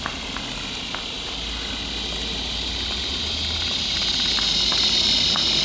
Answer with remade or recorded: recorded